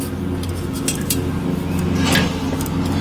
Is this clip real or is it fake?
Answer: real